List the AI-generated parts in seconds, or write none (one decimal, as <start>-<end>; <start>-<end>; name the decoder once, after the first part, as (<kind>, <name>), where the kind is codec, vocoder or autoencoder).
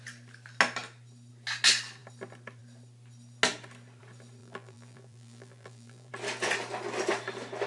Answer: 4.4-6.1 (vocoder, BigVGAN v2)